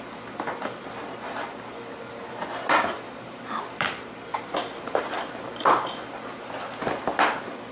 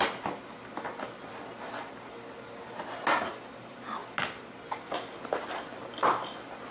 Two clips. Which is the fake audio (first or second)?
first